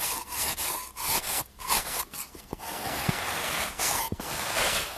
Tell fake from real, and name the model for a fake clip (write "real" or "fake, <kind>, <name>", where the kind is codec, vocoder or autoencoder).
fake, codec, SNAC